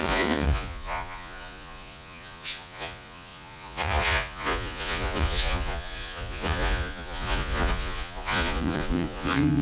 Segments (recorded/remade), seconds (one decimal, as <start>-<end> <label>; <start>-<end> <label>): 0.0-9.6 remade